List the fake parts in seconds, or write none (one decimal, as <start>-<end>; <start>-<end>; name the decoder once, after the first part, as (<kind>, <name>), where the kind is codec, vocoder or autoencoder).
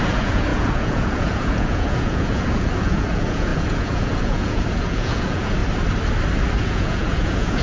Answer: 0.0-5.6 (vocoder, Vocos); 6.6-7.6